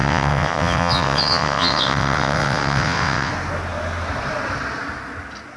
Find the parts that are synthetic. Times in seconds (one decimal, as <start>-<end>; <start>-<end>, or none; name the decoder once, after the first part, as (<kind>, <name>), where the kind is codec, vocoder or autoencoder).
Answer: 0.0-3.3 (vocoder, WaveNeXt)